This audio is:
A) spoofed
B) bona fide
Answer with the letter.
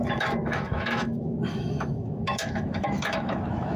A